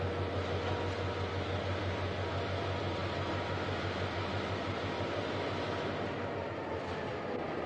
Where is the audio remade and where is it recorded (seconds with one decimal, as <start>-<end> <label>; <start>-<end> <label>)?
0.0-7.7 recorded